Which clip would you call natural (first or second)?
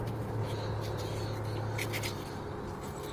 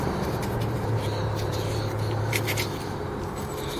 first